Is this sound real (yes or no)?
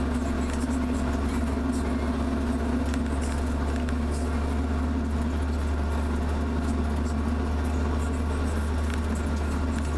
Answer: yes